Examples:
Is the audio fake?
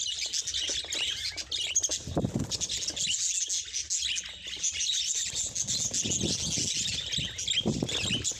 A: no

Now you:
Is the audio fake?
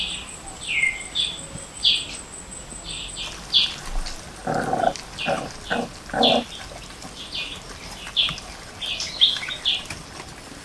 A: no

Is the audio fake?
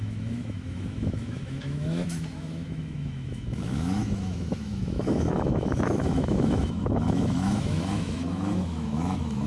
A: yes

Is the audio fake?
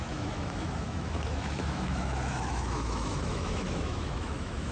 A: yes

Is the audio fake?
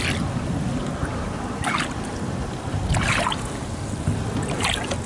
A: no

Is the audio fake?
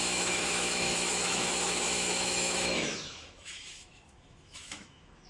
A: yes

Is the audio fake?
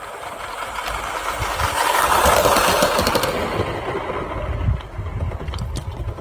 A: no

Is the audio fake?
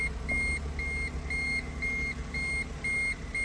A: no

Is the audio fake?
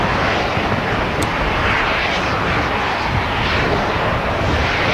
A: no